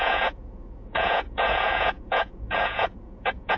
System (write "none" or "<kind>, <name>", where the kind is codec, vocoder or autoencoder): vocoder, Vocos